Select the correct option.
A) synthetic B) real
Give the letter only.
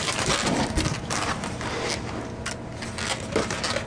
B